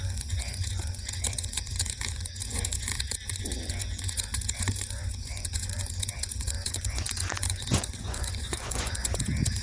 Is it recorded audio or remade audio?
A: remade